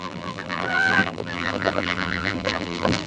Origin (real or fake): fake